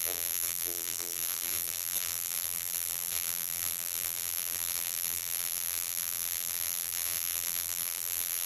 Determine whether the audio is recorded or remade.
remade